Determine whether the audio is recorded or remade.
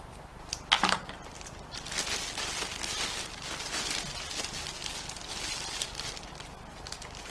recorded